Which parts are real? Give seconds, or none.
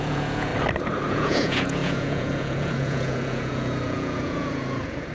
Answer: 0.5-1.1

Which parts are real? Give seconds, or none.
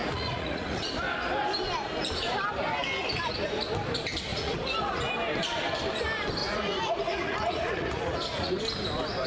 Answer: 0.9-4.3; 5.1-6.4; 8.6-9.3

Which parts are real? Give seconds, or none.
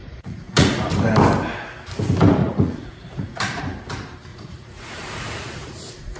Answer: 0.9-2.4; 3.6-4.3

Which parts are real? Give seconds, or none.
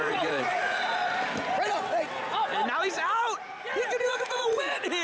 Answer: 1.0-4.0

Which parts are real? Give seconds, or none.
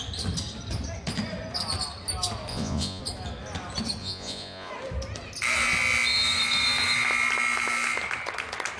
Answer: 0.0-2.5; 3.0-4.0; 4.7-8.8